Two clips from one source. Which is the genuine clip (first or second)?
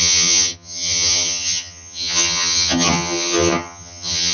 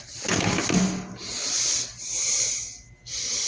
second